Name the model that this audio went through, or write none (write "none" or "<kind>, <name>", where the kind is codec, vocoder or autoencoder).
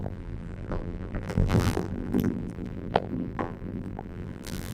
vocoder, BigVGAN v2